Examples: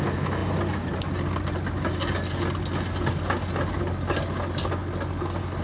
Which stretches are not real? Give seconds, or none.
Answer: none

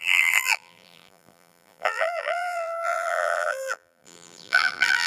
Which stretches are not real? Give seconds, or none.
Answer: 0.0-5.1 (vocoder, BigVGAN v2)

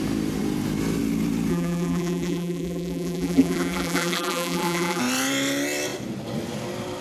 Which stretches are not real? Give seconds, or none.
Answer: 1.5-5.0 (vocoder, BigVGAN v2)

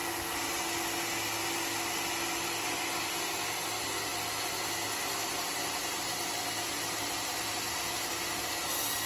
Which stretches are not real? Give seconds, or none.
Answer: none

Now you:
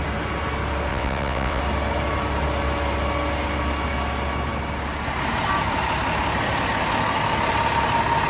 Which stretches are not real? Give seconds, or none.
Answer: 0.9-1.6 (vocoder, WaveNeXt)

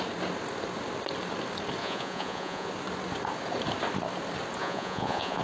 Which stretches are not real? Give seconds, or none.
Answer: 1.8-2.7 (vocoder, Vocos); 4.6-5.4

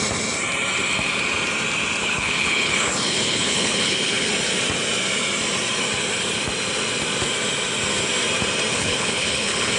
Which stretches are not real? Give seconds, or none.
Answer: 2.0-4.3 (codec, HILCodec); 8.7-9.8

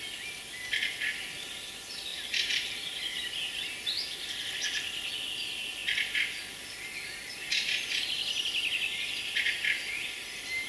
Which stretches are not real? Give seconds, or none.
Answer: 2.1-4.3 (vocoder, BigVGAN v2)